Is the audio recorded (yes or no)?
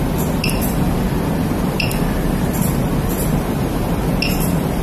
no